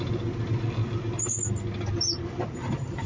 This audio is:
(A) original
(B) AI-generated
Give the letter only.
A